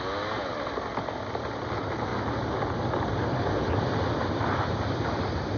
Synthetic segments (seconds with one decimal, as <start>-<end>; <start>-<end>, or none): 2.1-5.6